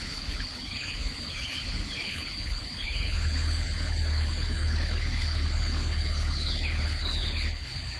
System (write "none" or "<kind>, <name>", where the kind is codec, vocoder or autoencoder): codec, HILCodec